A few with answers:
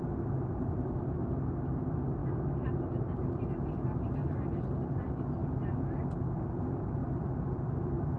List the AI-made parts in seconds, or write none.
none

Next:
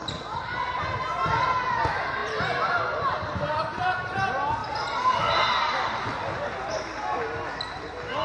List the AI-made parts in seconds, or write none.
none

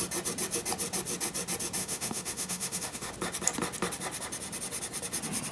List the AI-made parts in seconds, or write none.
1.8-3.1 (autoencoder, DAC-VAE)

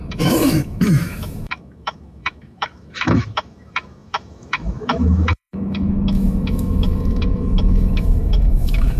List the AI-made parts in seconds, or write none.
0.0-9.0 (autoencoder, DAC-VAE)